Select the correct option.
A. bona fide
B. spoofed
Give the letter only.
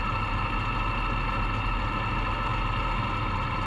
A